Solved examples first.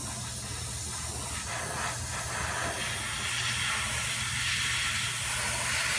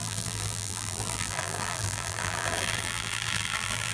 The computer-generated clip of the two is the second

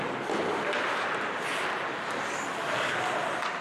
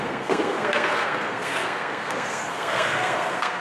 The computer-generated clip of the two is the second